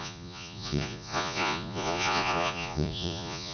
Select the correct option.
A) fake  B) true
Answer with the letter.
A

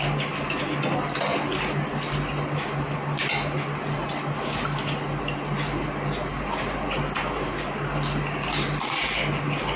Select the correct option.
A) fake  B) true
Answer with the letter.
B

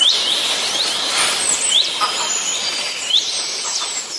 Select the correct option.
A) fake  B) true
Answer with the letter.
B